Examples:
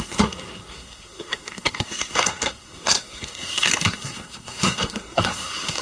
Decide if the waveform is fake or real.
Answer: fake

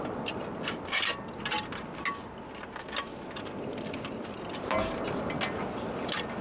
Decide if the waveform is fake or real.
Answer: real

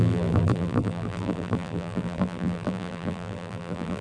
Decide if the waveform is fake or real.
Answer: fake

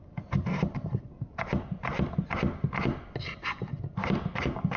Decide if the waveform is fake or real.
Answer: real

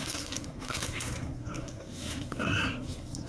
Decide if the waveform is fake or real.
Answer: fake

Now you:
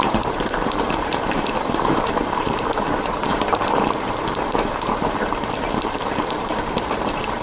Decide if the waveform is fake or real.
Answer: fake